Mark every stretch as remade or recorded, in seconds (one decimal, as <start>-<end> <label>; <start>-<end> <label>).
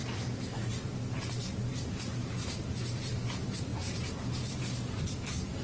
0.0-1.7 recorded; 1.7-2.6 remade; 2.6-3.7 recorded; 3.7-5.0 remade; 5.0-5.6 recorded